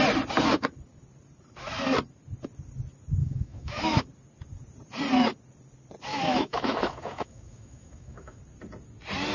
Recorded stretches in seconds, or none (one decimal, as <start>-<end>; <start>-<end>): 0.0-3.2; 4.0-6.1; 8.4-9.3